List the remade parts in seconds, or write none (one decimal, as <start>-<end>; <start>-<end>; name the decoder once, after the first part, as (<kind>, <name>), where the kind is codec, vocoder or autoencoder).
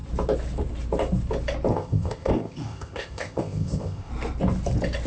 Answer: 1.7-4.1 (codec, ZipCodec)